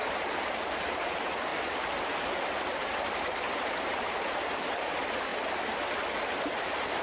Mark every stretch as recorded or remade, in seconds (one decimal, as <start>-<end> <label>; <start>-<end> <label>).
0.0-1.5 remade; 1.5-3.0 recorded; 3.0-5.3 remade; 5.3-7.0 recorded